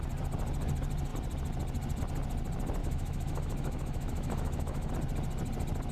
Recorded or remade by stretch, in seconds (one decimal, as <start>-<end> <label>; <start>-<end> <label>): 0.0-2.8 recorded; 2.8-4.9 remade; 4.9-5.9 recorded